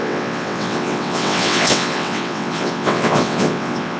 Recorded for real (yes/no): no